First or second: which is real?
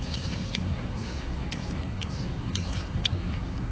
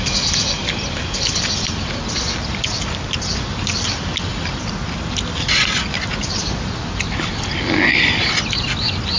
second